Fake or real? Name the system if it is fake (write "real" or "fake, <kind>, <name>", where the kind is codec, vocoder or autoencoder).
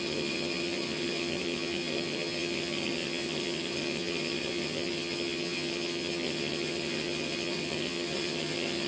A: fake, vocoder, HiFi-GAN